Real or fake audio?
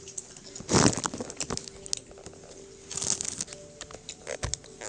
real